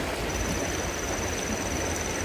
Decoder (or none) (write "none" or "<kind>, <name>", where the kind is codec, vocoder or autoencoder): none